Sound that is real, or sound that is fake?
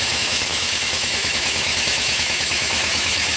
fake